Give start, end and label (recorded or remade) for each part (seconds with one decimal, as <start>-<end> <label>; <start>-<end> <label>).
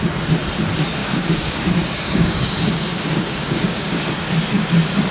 0.0-1.0 recorded; 1.0-4.1 remade; 4.1-5.1 recorded